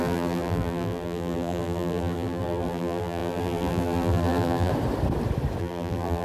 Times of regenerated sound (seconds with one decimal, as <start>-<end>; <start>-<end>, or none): 0.0-4.7; 5.6-6.2